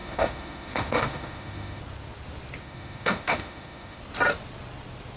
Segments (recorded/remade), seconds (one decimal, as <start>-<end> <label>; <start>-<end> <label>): 0.0-1.8 remade; 1.8-2.6 recorded; 2.6-4.0 remade; 4.0-5.2 recorded